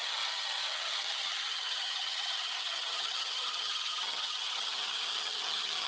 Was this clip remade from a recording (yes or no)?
yes